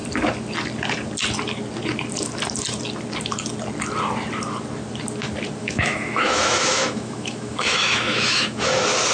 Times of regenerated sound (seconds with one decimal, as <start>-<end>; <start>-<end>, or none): 5.6-8.7